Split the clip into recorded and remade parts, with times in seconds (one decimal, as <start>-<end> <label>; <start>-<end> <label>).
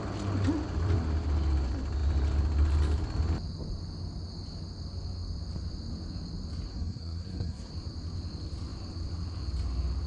0.0-6.7 recorded; 6.7-7.7 remade; 7.7-10.1 recorded